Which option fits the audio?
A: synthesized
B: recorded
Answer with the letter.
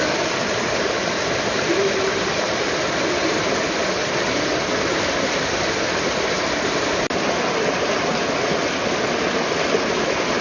B